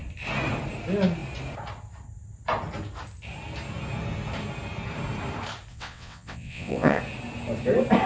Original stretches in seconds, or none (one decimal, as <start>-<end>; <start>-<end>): 0.0-5.7; 7.0-8.1